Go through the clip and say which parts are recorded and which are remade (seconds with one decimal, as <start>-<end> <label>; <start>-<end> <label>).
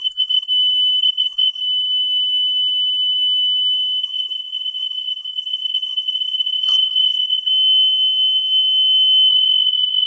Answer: 0.0-0.5 remade; 0.5-1.0 recorded; 1.0-1.6 remade; 1.6-4.0 recorded; 4.0-7.5 remade; 7.5-9.3 recorded; 9.3-10.1 remade